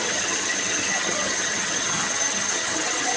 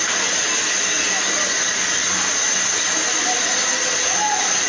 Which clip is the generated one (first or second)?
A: first